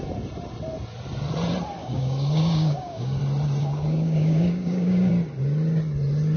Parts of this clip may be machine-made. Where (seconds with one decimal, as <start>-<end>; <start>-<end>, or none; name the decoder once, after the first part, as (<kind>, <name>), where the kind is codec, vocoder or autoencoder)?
1.8-3.2 (codec, DAC); 3.6-5.1